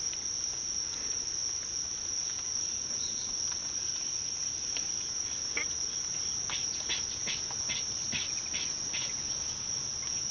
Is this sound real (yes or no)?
yes